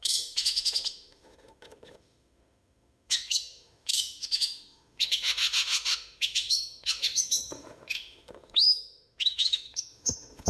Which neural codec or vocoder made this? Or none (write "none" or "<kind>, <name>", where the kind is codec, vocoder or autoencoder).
autoencoder, DAC-VAE